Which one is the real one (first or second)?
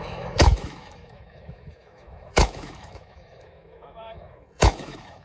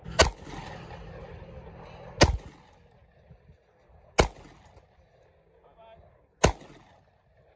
second